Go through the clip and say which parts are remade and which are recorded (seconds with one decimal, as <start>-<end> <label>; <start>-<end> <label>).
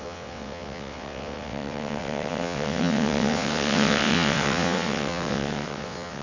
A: 0.0-6.2 remade